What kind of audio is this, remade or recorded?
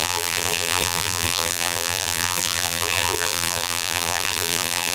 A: remade